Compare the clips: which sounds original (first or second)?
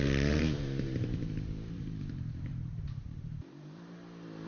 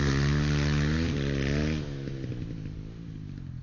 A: second